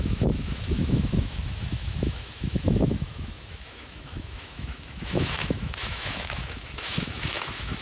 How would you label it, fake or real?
fake